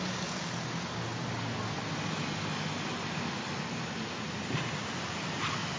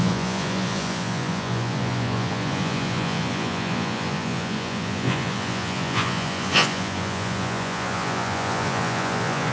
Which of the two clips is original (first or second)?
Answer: first